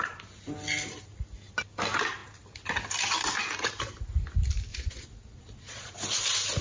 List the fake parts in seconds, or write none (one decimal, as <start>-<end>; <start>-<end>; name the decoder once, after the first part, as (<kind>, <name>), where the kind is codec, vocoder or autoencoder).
4.7-5.9 (vocoder, Vocos)